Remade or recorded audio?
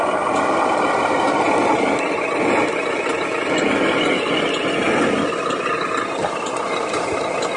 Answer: recorded